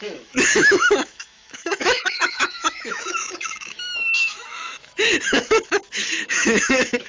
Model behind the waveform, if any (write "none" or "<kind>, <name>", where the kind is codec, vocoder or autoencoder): autoencoder, DAC-VAE